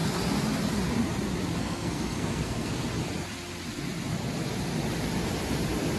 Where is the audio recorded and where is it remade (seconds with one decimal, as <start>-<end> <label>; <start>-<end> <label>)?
0.0-1.6 recorded; 1.6-2.8 remade; 2.8-6.0 recorded